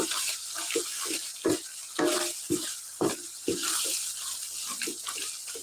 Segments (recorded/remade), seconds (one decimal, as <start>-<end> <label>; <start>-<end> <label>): 0.0-0.4 remade; 0.4-3.1 recorded; 3.1-3.6 remade; 3.6-5.6 recorded